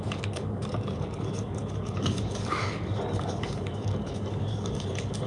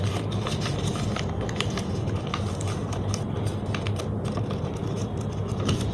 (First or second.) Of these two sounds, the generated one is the first